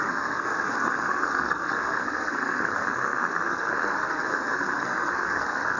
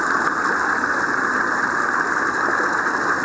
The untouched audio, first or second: second